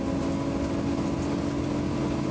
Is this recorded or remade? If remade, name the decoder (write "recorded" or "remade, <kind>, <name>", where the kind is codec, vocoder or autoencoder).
recorded